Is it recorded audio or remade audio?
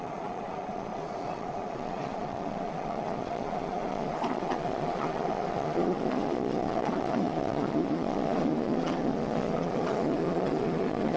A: remade